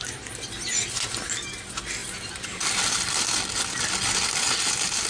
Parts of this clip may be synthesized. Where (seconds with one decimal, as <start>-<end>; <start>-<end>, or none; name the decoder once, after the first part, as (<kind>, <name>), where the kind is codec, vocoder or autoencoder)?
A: none